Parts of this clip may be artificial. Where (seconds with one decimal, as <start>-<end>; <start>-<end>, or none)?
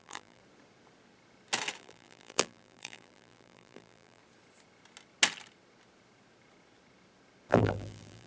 0.0-0.4; 1.8-4.2; 7.5-8.3